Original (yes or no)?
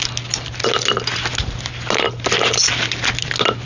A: yes